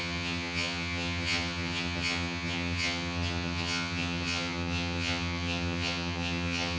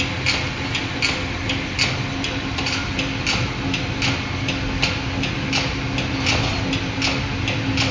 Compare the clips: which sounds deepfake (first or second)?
first